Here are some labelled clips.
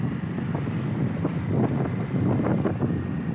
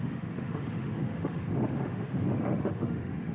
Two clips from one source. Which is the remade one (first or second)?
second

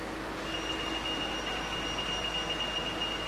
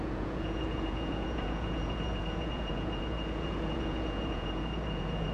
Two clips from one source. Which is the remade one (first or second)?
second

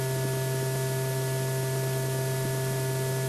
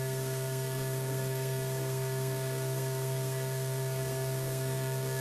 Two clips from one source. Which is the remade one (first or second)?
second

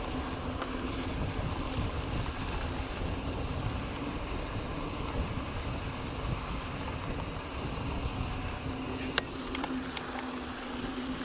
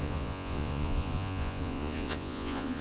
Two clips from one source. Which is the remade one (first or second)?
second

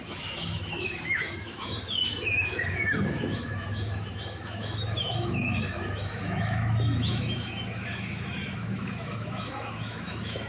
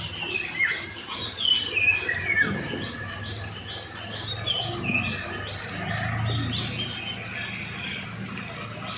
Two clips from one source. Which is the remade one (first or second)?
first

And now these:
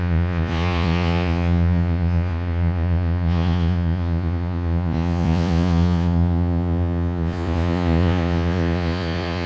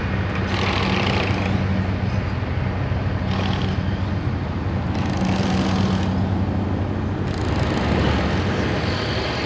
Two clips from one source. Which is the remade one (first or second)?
first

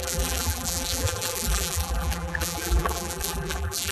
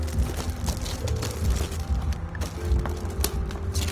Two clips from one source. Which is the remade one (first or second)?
first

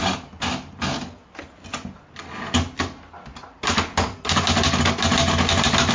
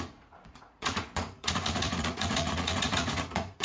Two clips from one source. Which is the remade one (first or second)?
second